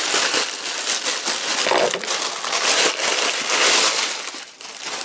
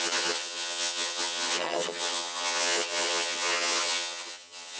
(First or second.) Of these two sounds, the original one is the first